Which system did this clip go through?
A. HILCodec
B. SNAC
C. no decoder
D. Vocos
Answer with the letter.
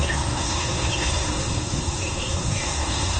B